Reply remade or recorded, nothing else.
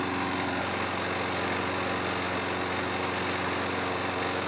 recorded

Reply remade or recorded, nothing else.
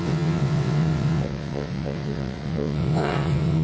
remade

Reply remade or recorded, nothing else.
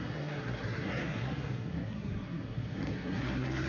remade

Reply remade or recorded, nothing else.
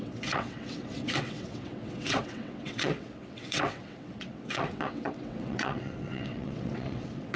remade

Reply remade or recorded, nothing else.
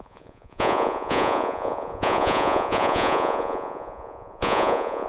remade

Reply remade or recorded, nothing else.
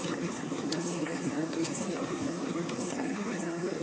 remade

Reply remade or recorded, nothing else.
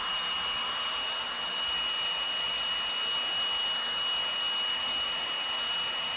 recorded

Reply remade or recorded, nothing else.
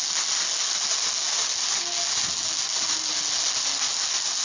recorded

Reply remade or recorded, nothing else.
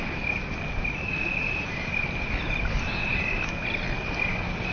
recorded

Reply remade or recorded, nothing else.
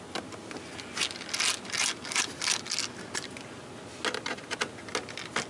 recorded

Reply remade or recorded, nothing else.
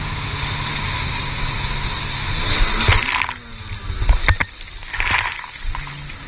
recorded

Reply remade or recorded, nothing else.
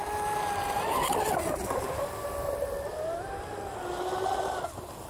recorded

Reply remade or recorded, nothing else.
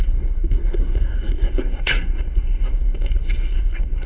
remade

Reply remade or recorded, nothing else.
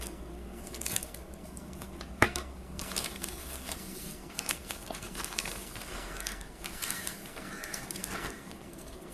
remade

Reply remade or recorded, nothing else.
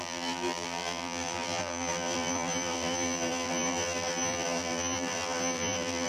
remade